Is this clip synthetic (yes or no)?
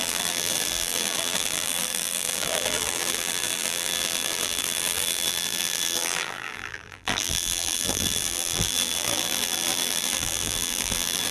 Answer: yes